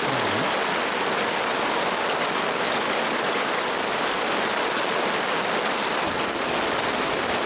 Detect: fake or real real